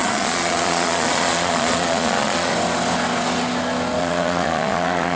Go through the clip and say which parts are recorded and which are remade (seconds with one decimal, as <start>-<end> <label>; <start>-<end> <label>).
0.0-2.5 remade; 2.5-4.0 recorded; 4.0-5.2 remade